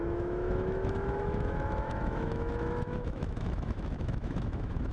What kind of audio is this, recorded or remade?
remade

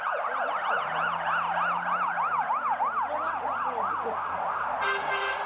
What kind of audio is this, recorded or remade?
recorded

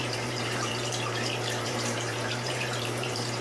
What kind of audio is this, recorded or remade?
remade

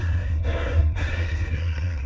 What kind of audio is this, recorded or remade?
remade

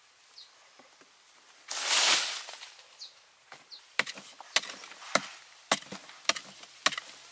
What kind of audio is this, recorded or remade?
recorded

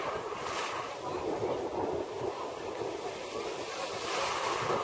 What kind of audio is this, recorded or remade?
recorded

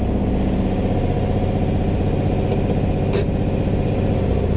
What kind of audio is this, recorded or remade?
recorded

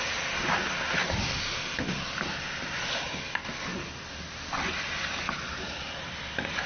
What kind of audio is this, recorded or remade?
recorded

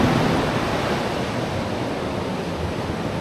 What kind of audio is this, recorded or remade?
recorded